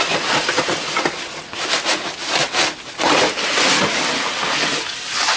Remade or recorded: recorded